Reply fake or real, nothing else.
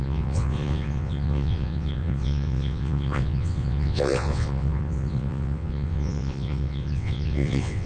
fake